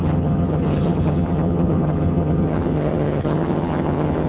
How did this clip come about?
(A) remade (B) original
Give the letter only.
A